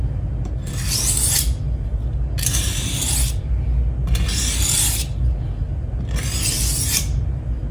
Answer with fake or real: real